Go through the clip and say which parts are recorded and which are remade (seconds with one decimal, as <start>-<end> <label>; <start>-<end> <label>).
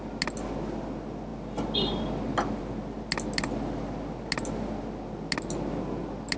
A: 0.0-6.4 recorded